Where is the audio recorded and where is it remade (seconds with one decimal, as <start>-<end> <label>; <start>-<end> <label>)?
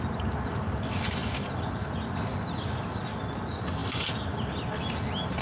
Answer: 0.0-5.4 recorded